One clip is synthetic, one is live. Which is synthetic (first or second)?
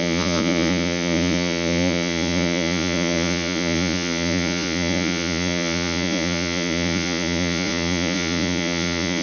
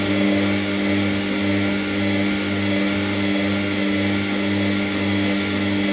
first